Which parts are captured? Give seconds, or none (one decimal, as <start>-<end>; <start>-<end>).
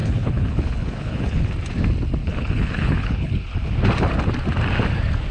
1.5-2.2; 3.7-5.3